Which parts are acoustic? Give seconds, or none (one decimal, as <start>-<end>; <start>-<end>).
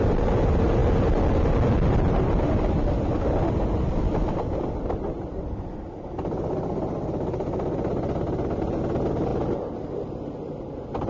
0.0-11.1